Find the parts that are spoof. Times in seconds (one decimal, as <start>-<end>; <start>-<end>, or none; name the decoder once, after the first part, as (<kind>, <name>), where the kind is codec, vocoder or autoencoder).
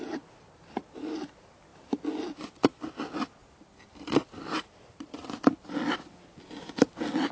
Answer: none